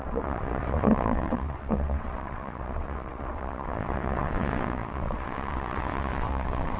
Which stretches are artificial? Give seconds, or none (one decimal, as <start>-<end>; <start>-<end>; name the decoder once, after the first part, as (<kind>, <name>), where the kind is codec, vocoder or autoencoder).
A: 0.0-6.8 (vocoder, WaveNeXt)